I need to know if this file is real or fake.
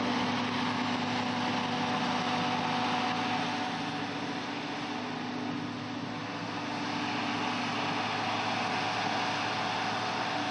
real